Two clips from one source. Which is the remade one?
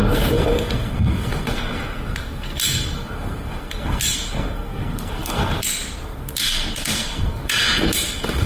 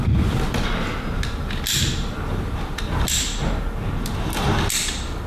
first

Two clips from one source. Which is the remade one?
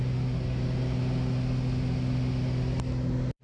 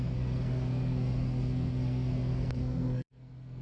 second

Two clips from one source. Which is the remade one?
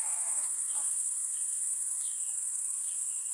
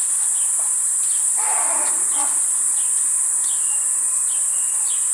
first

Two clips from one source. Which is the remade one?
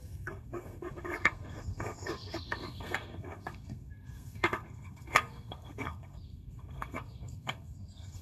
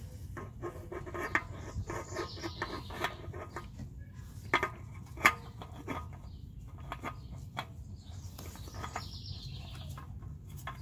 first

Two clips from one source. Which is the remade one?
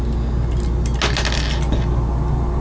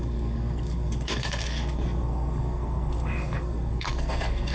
second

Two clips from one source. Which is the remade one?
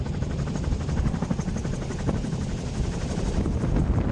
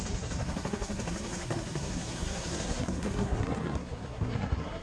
second